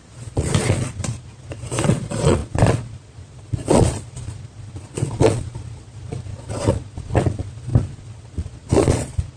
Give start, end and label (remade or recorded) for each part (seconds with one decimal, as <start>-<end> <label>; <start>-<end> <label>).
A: 0.0-9.4 remade